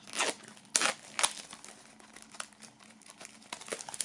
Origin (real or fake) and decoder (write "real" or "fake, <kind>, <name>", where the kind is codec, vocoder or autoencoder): real